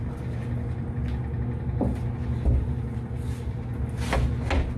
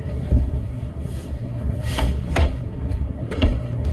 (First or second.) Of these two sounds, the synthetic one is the second